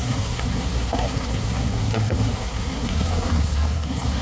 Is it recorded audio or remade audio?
remade